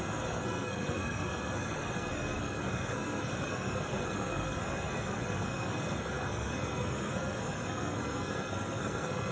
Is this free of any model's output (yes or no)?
no